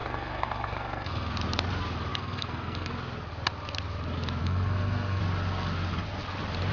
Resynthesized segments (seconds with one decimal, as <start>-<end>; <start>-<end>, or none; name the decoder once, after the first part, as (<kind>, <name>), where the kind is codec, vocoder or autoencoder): 0.0-1.3 (codec, SNAC); 2.1-2.9; 4.4-5.2

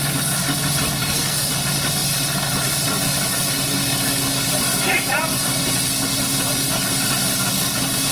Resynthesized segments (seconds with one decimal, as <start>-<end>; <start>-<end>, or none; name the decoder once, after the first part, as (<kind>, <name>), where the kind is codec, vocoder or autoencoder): 1.0-1.5 (codec, SNAC)

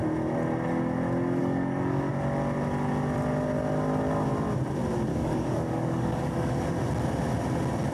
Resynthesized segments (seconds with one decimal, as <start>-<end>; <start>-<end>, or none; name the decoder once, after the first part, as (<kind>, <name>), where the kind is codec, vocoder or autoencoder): 1.4-2.1 (codec, DAC); 5.1-6.7

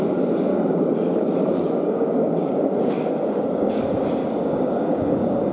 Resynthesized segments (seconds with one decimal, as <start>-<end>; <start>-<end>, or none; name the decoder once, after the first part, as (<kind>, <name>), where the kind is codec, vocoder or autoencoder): 0.5-3.8 (codec, DAC); 4.2-5.5

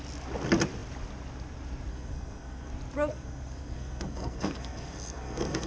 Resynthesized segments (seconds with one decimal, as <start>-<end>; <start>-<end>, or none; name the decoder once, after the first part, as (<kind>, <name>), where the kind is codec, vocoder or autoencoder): 1.9-2.7 (codec, SNAC); 3.1-5.7

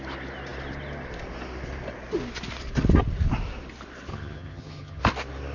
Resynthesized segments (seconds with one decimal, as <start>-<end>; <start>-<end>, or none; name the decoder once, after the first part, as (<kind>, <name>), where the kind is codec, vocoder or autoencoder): 4.1-5.0 (vocoder, HiFi-GAN)

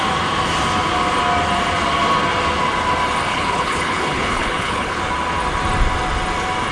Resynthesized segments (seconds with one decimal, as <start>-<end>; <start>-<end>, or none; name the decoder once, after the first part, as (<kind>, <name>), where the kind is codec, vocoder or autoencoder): 3.3-5.0 (codec, HILCodec)